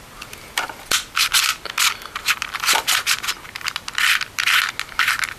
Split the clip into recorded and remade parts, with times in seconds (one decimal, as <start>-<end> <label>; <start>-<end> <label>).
0.0-5.4 recorded